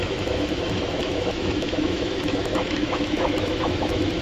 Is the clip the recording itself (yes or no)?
no